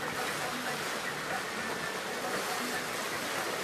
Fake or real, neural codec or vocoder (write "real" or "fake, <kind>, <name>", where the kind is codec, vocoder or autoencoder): real